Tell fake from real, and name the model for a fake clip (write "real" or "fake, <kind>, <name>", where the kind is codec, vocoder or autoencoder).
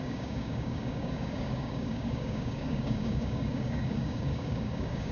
fake, codec, DAC